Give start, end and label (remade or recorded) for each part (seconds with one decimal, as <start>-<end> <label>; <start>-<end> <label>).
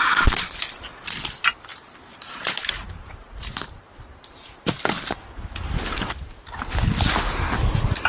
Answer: 0.0-1.7 recorded; 1.7-6.6 remade; 6.6-8.1 recorded